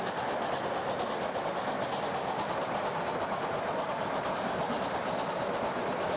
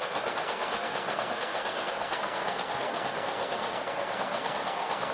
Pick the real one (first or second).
first